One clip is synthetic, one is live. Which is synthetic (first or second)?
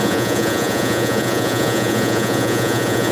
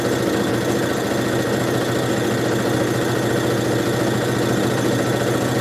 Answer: first